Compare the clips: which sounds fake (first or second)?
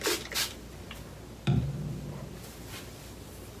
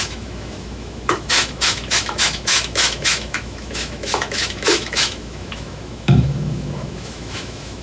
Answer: second